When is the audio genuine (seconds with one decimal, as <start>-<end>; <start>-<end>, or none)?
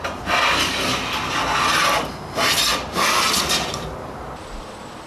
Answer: 0.0-2.7; 3.5-5.1